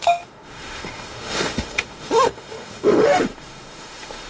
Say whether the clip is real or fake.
fake